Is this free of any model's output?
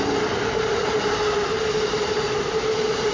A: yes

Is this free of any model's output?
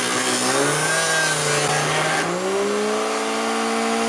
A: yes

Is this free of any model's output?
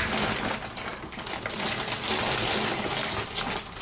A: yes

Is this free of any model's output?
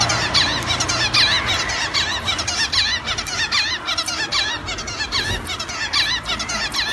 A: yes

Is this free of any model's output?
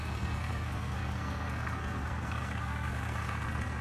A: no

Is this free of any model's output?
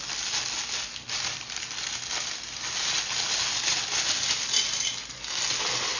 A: yes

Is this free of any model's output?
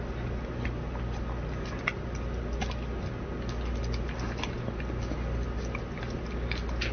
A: yes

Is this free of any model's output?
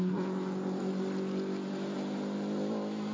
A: yes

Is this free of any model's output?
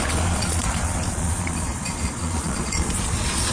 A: no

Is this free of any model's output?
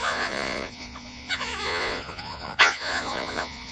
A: no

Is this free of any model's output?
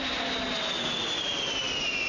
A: yes